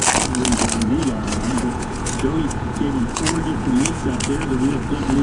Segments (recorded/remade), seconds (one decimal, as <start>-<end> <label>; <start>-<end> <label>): 0.0-1.0 recorded; 1.0-4.1 remade; 4.1-5.2 recorded